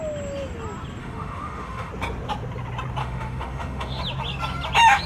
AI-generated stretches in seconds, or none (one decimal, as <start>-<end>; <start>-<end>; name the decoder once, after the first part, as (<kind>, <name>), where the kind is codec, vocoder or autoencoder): 1.0-1.9 (autoencoder, DAC-VAE); 3.0-4.0